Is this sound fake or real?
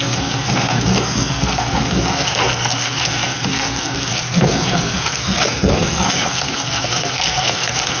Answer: fake